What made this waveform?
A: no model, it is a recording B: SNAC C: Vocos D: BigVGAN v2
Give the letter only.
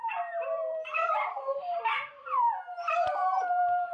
D